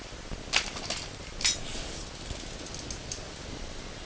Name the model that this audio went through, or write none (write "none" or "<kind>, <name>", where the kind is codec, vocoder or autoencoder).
none